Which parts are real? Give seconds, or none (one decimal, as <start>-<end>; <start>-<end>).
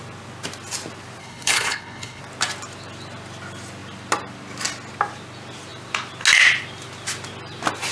0.0-1.2; 2.2-7.9